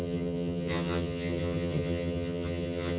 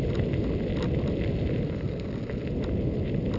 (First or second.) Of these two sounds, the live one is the second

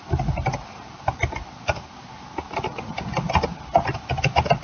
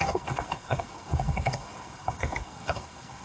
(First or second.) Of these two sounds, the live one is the first